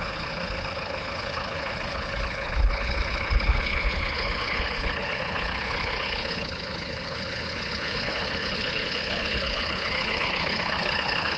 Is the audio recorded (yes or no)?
no